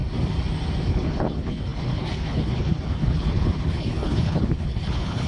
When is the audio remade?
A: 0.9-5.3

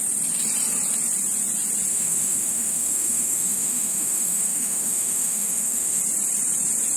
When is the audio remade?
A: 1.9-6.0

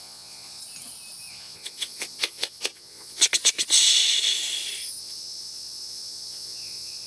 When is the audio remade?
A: 0.0-0.6; 1.3-3.2; 5.0-7.1